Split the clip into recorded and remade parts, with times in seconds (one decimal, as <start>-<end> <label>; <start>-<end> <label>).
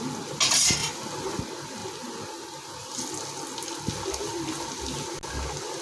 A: 0.0-5.8 recorded